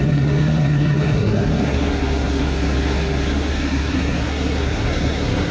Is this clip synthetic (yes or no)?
yes